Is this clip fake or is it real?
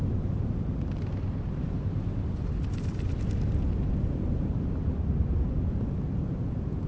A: real